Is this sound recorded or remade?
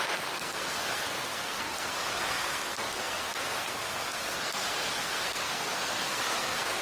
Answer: remade